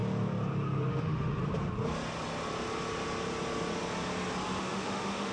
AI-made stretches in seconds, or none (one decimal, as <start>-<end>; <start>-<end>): 0.9-1.4; 4.6-5.3

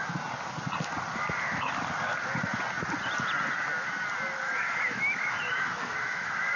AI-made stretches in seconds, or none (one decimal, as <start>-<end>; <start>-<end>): 4.4-6.6

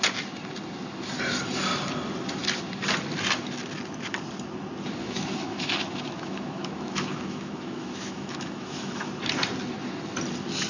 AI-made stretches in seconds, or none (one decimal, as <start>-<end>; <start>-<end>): 5.0-9.1

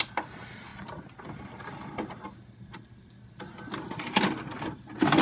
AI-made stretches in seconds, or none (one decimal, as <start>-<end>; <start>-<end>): none

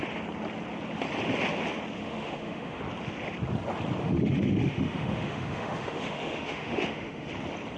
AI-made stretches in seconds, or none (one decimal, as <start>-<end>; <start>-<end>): 2.0-2.8; 4.0-7.3

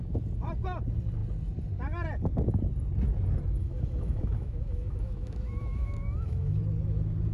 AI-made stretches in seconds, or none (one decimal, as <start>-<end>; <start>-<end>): 3.6-6.6